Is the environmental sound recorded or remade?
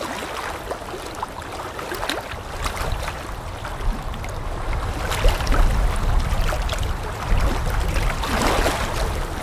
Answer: recorded